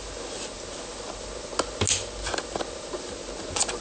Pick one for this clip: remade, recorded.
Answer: recorded